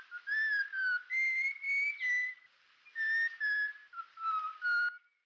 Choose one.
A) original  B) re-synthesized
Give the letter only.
A